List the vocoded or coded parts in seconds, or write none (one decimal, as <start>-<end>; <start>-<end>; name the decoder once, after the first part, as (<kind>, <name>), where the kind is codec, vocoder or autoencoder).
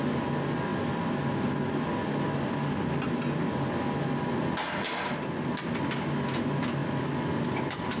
none